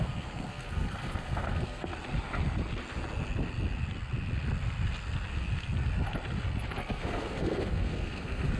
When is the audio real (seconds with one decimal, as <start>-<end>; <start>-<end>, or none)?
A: 1.9-6.8